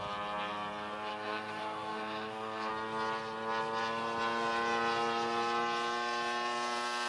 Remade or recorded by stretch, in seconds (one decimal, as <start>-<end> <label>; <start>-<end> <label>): 0.0-1.1 recorded; 1.1-2.7 remade; 2.7-7.1 recorded